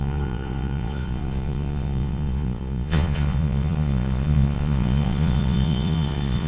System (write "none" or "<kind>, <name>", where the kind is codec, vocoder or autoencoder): vocoder, Vocos